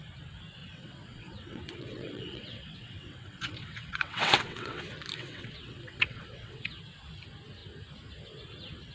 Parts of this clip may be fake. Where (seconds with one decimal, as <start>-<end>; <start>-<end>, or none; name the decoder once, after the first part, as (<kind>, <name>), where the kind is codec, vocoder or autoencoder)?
0.6-4.8 (vocoder, WaveNeXt); 5.2-6.8